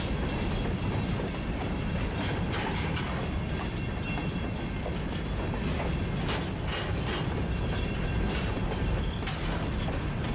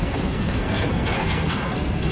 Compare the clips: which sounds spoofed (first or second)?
second